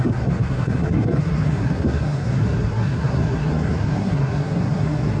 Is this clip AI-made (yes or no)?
yes